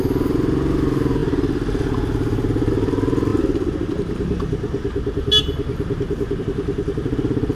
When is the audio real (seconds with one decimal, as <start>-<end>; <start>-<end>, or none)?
0.0-7.6